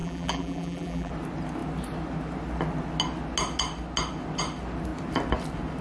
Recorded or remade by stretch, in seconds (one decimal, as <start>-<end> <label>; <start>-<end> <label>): 0.0-1.1 remade; 1.1-5.8 recorded